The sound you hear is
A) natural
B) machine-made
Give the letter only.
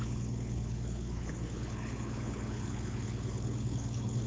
B